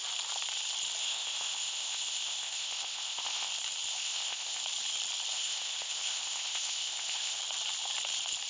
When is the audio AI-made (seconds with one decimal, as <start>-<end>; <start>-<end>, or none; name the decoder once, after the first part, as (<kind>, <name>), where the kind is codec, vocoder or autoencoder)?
1.0-3.5 (codec, ZipCodec); 3.9-4.6; 5.3-7.4